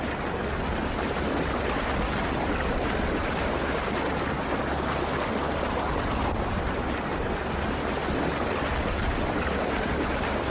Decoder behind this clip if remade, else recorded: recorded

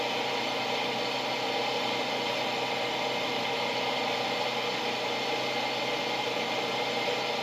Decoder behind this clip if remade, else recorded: recorded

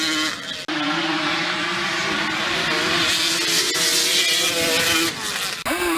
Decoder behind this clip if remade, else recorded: recorded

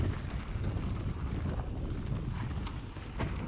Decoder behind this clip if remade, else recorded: recorded